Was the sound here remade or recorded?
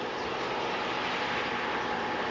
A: recorded